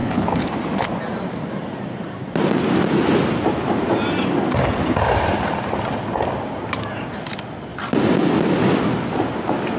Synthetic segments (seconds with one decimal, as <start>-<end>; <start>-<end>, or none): 0.0-0.5